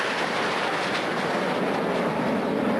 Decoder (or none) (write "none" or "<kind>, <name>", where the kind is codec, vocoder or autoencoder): none